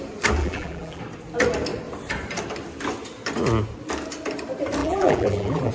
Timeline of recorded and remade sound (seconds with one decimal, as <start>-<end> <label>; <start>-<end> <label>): 0.0-0.4 recorded; 0.4-1.0 remade; 1.0-4.8 recorded; 4.8-5.7 remade